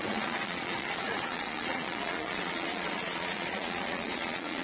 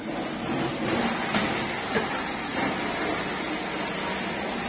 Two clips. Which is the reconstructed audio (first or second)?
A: first